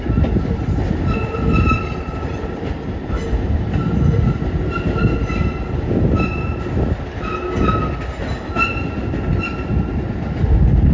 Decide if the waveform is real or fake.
real